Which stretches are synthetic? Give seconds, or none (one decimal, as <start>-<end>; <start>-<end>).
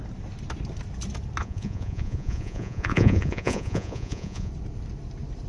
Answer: 1.4-4.5